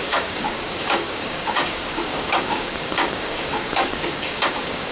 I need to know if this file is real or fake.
fake